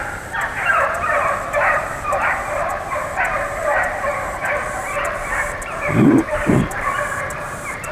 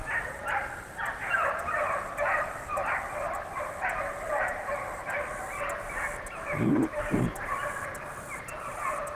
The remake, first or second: first